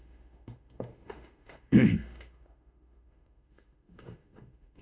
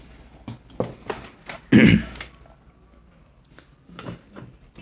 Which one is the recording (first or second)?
second